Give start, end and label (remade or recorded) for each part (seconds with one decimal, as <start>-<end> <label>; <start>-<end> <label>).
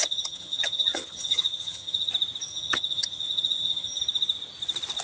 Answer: 0.0-2.1 remade; 2.1-2.5 recorded; 2.5-4.0 remade; 4.0-5.0 recorded